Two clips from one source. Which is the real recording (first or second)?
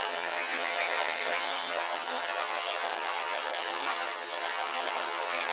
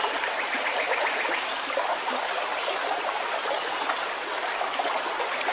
second